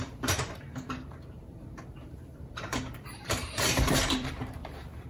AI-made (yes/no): yes